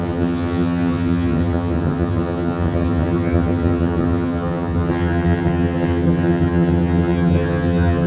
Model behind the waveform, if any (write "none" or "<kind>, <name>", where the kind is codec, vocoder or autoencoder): vocoder, HiFi-GAN